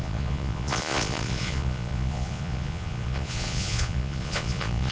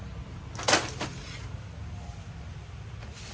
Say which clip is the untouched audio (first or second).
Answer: second